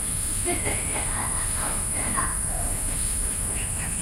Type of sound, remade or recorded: remade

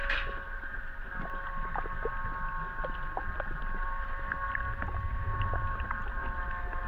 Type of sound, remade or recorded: recorded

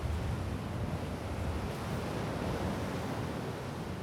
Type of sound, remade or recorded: recorded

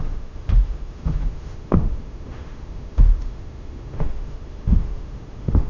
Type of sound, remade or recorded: remade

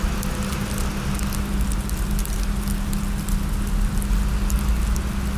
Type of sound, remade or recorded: recorded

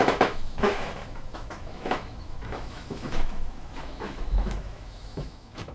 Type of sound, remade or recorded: remade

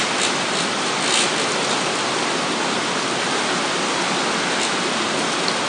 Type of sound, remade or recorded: recorded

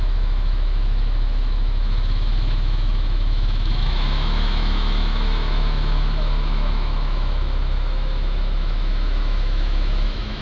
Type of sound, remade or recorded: remade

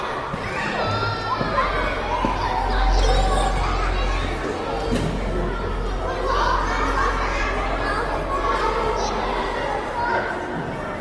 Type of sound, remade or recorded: recorded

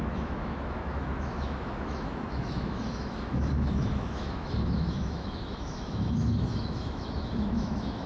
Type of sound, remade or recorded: remade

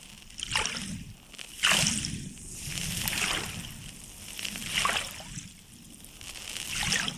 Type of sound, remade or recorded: recorded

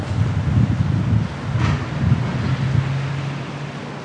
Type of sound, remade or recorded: recorded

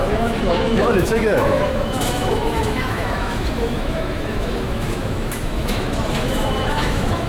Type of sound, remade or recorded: remade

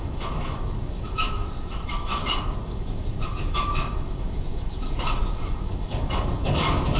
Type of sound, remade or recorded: remade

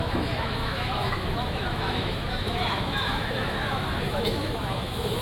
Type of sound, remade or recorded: remade